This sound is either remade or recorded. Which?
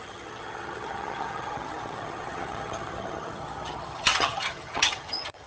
remade